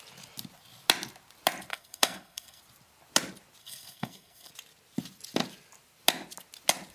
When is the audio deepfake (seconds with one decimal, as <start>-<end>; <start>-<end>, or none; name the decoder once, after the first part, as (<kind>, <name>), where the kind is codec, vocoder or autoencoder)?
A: 1.7-2.6 (codec, SNAC); 3.6-4.5